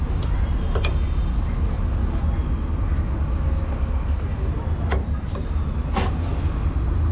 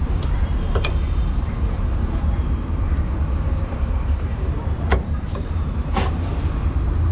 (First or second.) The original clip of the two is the first